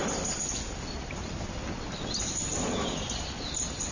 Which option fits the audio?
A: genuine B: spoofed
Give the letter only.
A